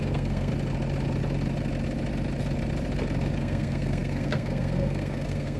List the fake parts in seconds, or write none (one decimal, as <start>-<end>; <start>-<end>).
0.0-0.5; 3.4-5.6